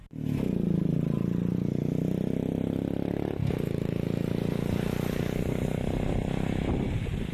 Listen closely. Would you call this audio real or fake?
real